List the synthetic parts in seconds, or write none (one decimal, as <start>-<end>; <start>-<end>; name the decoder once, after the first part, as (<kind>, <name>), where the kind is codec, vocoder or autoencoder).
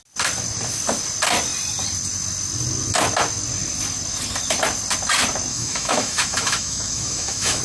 5.5-7.6 (autoencoder, DAC-VAE)